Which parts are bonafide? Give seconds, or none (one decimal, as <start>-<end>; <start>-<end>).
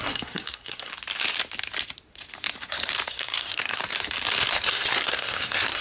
0.9-3.1; 3.8-4.5